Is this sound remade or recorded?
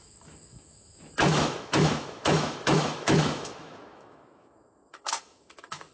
remade